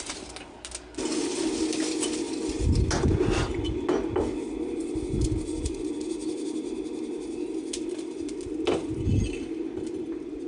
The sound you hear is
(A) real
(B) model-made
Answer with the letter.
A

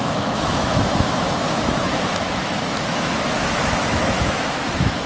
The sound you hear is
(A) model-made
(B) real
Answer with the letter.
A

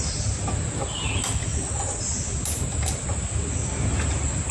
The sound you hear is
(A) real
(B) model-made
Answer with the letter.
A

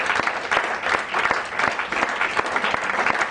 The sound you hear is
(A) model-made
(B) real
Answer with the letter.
B